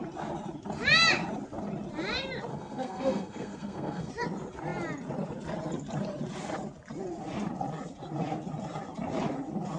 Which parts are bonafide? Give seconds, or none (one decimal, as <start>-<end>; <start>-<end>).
0.0-2.5; 4.1-9.8